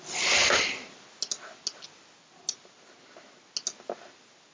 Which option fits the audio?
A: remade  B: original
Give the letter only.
B